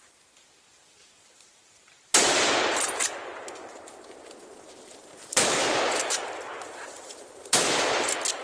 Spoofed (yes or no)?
yes